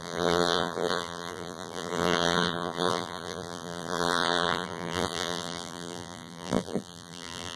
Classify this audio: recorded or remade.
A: remade